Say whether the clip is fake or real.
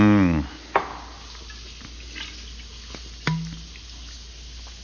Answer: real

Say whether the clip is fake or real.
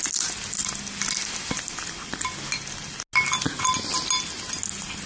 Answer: real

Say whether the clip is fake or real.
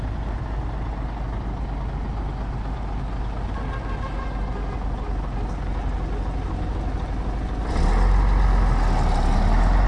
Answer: real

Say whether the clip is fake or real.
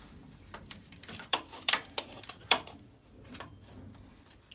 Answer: fake